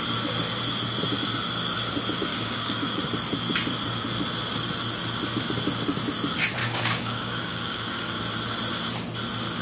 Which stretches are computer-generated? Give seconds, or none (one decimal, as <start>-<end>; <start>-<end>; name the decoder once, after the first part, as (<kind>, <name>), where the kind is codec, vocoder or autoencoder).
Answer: 2.3-3.0 (codec, DAC); 6.6-8.2